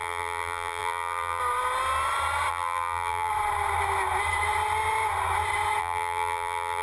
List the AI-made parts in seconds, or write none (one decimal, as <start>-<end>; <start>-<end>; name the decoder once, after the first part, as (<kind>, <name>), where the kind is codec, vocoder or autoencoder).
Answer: 0.0-1.4 (vocoder, BigVGAN v2); 2.5-3.3; 5.8-6.8